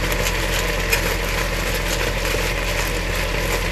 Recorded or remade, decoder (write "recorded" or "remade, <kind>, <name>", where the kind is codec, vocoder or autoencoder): recorded